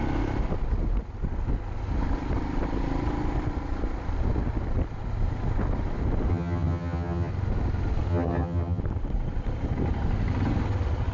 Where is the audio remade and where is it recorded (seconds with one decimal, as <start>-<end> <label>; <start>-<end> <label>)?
0.0-6.3 recorded; 6.3-7.3 remade; 7.3-8.1 recorded; 8.1-8.8 remade; 8.8-11.1 recorded